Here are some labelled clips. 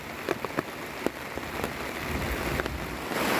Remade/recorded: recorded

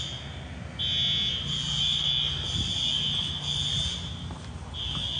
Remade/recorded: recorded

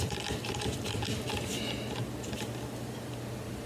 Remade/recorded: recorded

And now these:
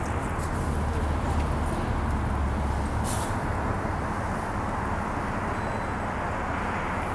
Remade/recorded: recorded